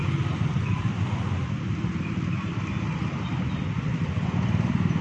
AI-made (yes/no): yes